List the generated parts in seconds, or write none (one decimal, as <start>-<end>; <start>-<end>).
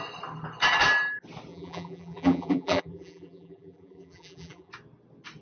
1.5-4.7